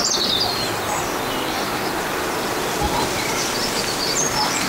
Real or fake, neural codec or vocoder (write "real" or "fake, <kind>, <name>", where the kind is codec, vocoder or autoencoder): real